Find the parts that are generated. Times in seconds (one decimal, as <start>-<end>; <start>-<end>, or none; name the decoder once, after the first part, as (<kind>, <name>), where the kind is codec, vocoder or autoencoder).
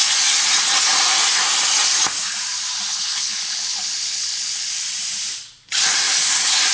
2.9-4.7 (codec, HILCodec)